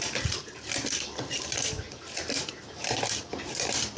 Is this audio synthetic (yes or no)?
yes